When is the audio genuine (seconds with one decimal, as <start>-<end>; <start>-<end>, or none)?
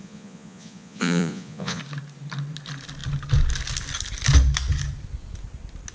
1.8-5.9